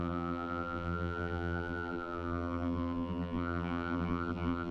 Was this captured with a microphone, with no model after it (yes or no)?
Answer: no